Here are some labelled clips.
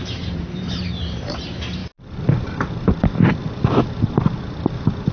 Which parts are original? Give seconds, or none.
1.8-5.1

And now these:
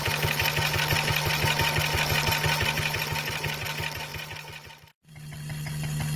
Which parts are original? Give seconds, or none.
0.0-6.2

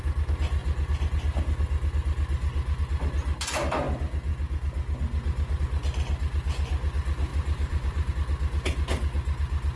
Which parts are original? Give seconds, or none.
0.0-7.3; 8.1-9.8

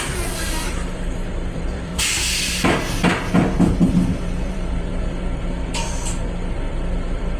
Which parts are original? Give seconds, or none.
1.9-3.9

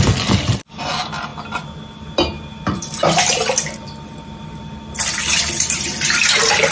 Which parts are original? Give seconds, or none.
1.3-4.6

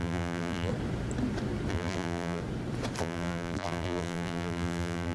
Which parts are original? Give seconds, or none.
0.7-1.7; 2.4-3.0

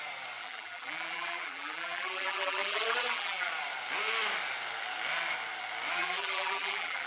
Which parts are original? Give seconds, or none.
0.0-0.4; 3.5-6.0

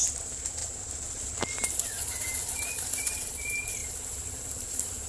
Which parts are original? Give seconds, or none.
0.0-3.8